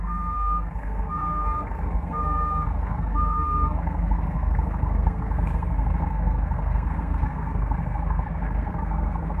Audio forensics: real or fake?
fake